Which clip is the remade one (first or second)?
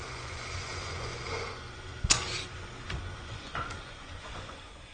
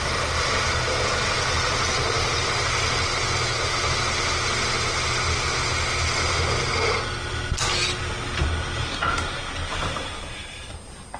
first